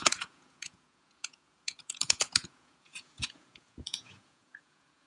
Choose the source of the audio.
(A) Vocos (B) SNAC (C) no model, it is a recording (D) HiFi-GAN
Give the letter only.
A